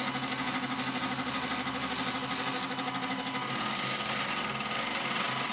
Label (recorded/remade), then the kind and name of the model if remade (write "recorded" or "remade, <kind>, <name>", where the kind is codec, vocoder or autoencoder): recorded